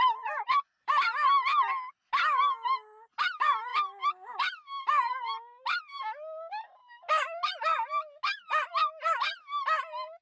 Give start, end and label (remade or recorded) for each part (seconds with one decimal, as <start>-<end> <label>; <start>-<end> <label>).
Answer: 0.0-10.2 recorded